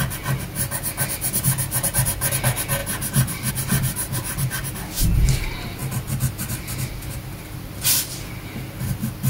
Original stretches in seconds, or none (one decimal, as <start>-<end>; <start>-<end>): 0.0-9.3